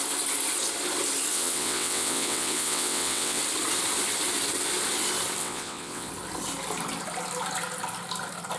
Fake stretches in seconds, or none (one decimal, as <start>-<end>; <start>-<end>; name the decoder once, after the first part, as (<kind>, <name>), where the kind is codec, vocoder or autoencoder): 1.3-3.4 (vocoder, WaveNeXt); 5.4-6.1